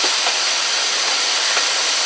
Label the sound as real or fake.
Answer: real